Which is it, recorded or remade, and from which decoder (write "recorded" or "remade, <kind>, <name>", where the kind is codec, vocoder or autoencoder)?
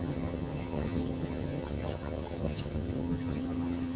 remade, vocoder, HiFi-GAN